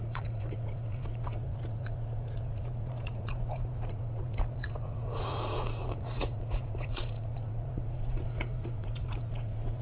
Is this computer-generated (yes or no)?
yes